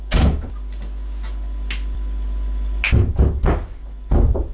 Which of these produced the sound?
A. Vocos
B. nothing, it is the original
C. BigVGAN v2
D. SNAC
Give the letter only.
B